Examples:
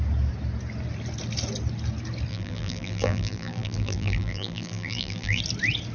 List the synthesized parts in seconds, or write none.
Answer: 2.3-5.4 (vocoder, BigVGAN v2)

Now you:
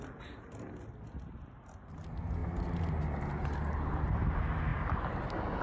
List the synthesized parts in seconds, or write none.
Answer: none

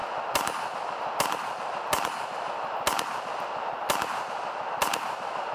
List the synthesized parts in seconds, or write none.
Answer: none

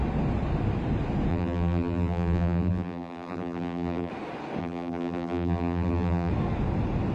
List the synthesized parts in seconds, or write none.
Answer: 1.3-4.1 (vocoder, BigVGAN v2); 4.6-6.3

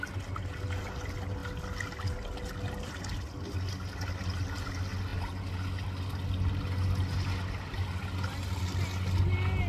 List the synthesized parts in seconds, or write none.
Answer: none

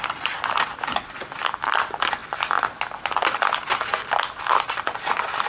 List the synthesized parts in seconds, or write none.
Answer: none